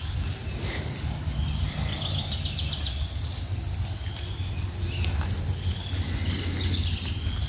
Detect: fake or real real